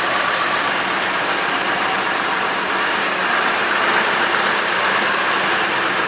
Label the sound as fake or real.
real